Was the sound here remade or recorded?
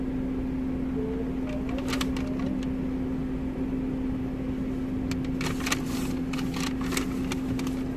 recorded